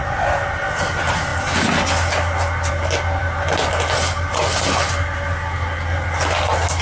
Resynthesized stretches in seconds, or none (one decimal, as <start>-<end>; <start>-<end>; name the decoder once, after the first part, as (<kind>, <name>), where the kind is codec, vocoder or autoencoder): none